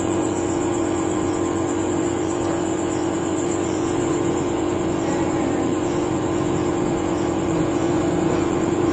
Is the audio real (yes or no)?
no